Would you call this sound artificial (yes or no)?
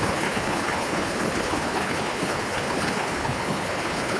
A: yes